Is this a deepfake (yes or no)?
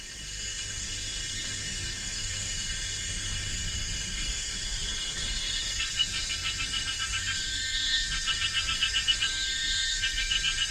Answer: yes